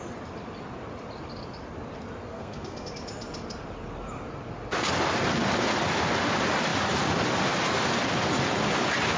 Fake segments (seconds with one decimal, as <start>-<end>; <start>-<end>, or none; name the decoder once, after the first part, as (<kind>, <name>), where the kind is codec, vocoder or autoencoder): 2.3-2.9 (codec, SNAC)